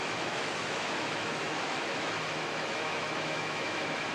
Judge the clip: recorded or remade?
remade